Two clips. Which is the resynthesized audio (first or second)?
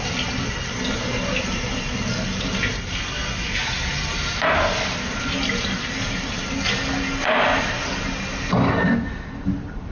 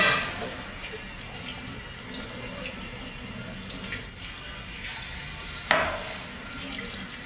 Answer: first